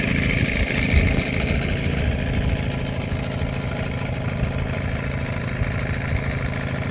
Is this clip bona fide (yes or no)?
yes